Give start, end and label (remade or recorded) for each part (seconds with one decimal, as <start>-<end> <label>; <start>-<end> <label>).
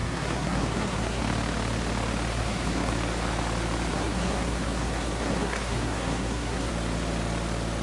0.0-1.2 remade; 1.2-2.3 recorded; 2.3-2.9 remade; 2.9-3.9 recorded; 3.9-6.7 remade; 6.7-7.8 recorded